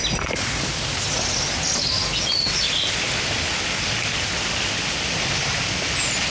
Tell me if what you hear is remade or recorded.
recorded